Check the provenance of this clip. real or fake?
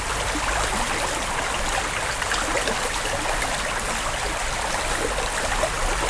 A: real